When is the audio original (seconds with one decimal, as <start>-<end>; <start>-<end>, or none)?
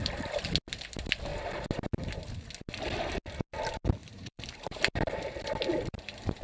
0.0-4.0; 4.8-5.7